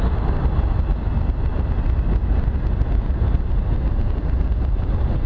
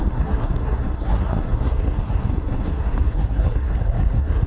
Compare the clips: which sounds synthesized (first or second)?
second